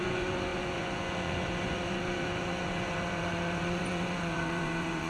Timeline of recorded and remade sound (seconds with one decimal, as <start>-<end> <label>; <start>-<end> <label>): 0.0-5.1 remade